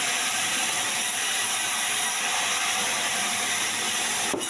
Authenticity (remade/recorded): remade